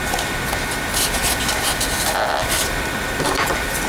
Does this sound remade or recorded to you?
remade